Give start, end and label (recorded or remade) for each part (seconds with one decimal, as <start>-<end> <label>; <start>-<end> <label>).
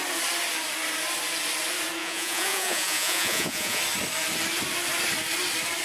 0.0-2.0 recorded; 2.0-3.8 remade; 3.8-5.8 recorded